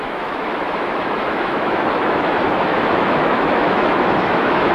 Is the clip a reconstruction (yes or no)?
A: yes